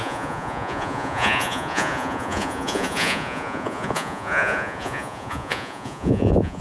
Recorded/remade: remade